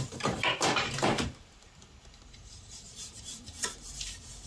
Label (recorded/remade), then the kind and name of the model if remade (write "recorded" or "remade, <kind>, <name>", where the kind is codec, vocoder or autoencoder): remade, vocoder, BigVGAN v2